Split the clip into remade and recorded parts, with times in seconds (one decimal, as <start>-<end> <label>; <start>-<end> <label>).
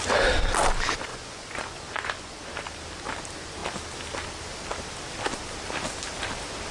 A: 0.0-1.1 recorded; 1.1-2.3 remade; 2.3-6.7 recorded